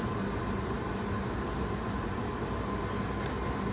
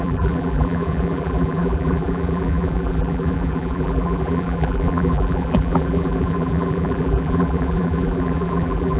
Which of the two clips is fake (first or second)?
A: second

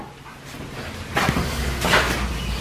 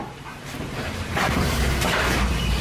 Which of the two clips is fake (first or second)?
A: second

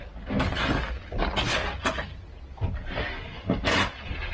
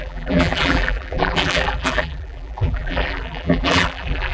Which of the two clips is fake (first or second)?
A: second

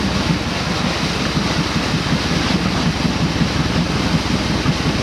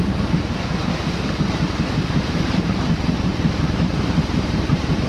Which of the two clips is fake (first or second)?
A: second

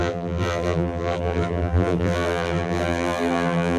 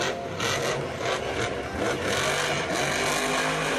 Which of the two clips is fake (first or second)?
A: first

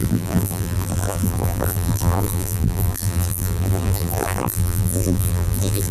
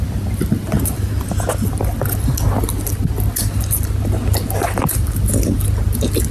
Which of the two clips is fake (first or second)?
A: first